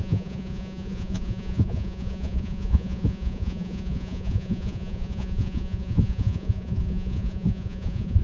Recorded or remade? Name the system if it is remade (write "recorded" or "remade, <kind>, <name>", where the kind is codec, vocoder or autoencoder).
remade, vocoder, Vocos